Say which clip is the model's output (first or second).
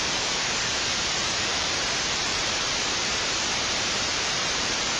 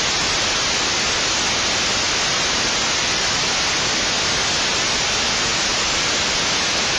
first